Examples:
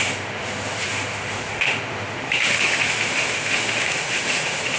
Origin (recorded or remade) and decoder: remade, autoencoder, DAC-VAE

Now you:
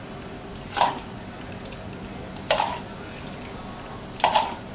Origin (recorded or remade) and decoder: recorded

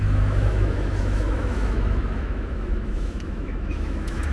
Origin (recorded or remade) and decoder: remade, autoencoder, DAC-VAE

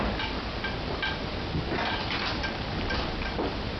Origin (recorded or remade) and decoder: recorded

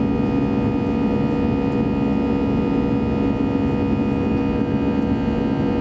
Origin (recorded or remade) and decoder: recorded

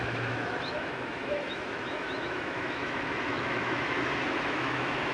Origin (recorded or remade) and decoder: remade, autoencoder, DAC-VAE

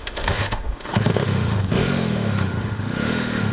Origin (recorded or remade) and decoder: remade, autoencoder, DAC-VAE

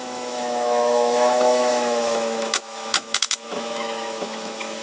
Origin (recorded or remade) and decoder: remade, autoencoder, DAC-VAE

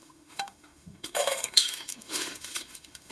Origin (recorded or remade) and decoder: remade, autoencoder, DAC-VAE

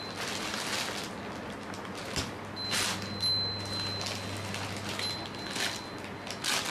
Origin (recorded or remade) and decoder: recorded